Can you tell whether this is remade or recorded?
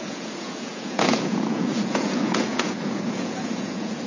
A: remade